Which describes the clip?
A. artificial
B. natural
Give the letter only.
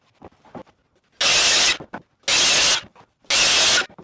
B